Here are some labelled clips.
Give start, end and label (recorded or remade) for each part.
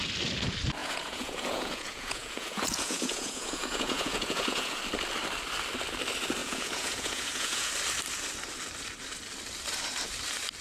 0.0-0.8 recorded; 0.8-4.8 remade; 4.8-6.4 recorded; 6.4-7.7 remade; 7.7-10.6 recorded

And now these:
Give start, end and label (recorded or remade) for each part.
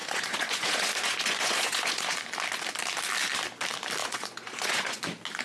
0.0-2.2 remade; 2.2-4.0 recorded; 4.0-5.0 remade; 5.0-5.4 recorded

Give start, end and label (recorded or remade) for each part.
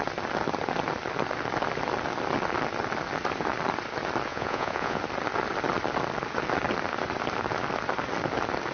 0.0-4.3 recorded; 4.3-5.0 remade; 5.0-8.7 recorded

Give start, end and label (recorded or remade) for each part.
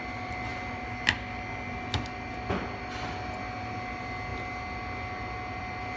0.0-6.0 recorded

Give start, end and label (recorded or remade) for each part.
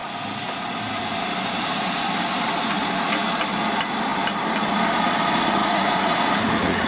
0.0-5.6 recorded; 5.6-6.9 remade